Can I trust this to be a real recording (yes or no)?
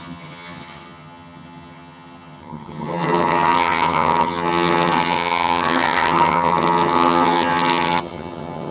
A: no